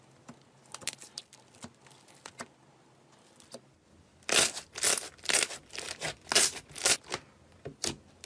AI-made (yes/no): no